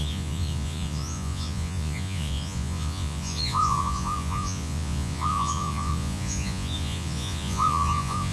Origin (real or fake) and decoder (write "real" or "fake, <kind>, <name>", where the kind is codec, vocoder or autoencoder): fake, vocoder, Vocos